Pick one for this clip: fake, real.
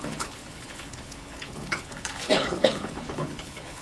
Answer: fake